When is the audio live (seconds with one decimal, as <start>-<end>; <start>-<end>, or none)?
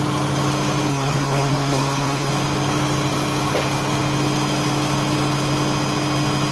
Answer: 0.0-0.9; 2.3-6.5